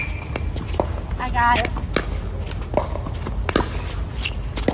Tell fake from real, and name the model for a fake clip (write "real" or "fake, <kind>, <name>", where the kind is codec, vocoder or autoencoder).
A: real